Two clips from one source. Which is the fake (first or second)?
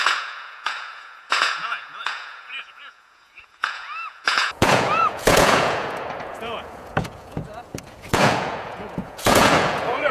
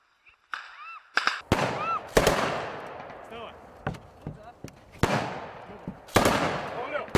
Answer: first